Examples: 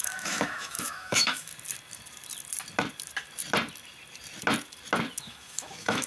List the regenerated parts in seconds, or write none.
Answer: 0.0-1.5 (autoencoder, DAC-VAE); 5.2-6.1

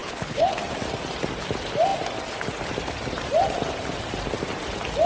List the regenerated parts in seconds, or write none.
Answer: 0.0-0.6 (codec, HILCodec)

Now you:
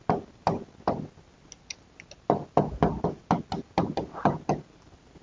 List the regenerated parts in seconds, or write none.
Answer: none